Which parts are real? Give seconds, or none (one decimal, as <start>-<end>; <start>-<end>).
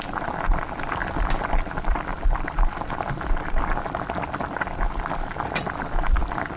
0.0-1.0; 1.5-2.1; 3.3-6.6